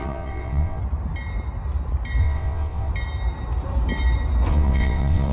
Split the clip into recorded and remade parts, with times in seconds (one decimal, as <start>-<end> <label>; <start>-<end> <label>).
0.0-0.8 remade; 0.8-2.2 recorded; 2.2-2.9 remade; 2.9-4.5 recorded; 4.5-5.3 remade